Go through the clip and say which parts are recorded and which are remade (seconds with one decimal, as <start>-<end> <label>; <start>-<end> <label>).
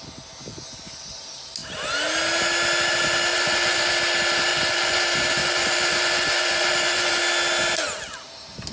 0.0-3.3 recorded; 3.3-3.9 remade; 3.9-4.5 recorded; 4.5-5.0 remade; 5.0-5.4 recorded; 5.4-7.2 remade; 7.2-8.7 recorded